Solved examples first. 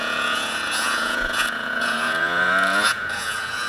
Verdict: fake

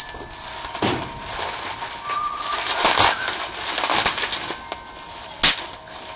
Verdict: real